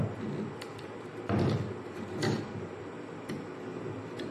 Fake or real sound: real